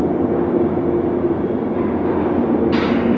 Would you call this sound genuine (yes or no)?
yes